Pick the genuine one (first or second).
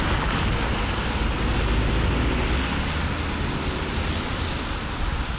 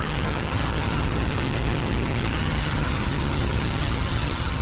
first